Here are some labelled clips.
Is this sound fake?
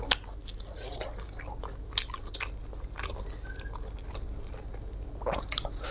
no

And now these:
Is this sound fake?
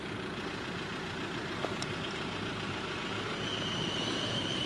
no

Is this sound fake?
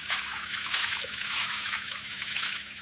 yes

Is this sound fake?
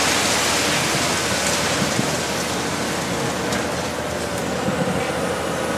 no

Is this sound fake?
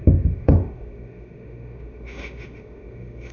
yes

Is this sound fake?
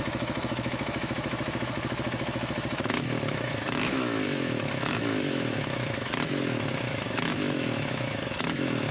yes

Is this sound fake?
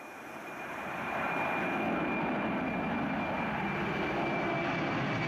no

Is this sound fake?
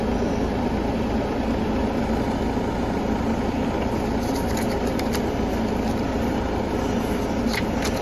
no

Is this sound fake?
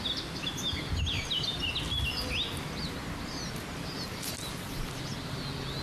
no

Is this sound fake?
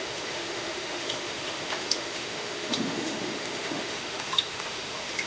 yes